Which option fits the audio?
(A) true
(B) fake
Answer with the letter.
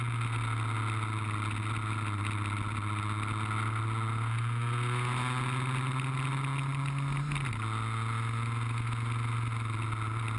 A